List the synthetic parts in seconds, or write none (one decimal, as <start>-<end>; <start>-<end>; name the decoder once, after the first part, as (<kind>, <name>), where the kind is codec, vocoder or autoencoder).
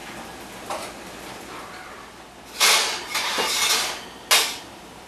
2.6-3.6 (vocoder, BigVGAN v2); 4.4-5.1